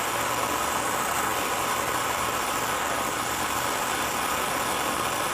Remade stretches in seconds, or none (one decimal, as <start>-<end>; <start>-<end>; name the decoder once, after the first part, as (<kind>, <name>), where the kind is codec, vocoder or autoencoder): none